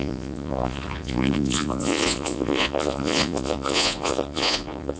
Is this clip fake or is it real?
fake